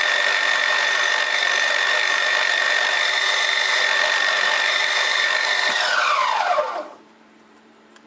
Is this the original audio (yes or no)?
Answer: no